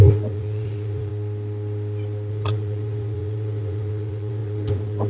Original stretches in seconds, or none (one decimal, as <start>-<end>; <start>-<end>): 1.1-2.3